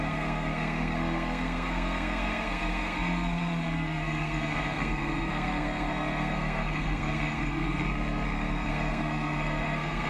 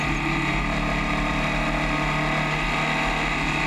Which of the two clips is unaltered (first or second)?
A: second